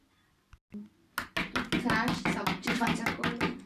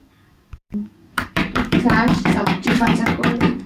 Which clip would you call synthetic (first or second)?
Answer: second